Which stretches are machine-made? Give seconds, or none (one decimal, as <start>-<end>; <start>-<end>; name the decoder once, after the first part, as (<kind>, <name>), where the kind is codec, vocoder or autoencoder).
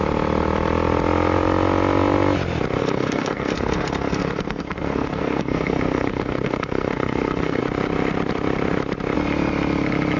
2.8-7.6 (codec, SNAC)